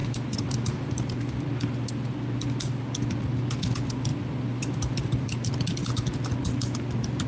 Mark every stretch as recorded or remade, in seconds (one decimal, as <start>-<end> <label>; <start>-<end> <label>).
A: 0.0-1.9 remade; 1.9-4.1 recorded; 4.1-5.5 remade; 5.5-7.3 recorded